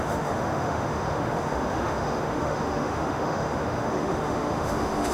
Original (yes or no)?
no